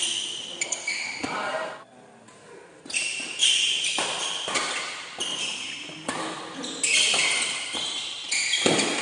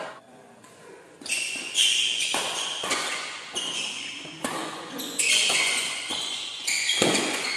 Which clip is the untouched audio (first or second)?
first